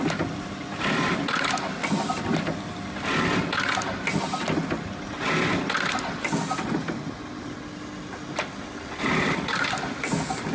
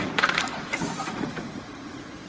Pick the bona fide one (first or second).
first